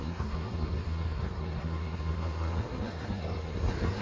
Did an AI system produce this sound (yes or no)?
yes